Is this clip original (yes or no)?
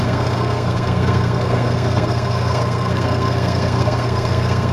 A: no